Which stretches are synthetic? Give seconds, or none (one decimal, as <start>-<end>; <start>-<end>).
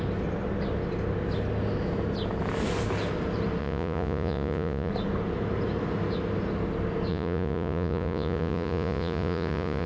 3.6-4.9; 7.1-9.9